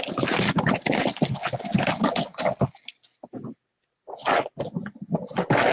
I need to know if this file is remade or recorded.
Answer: recorded